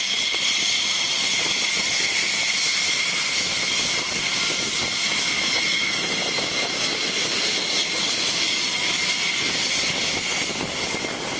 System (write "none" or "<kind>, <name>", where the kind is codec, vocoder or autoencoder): none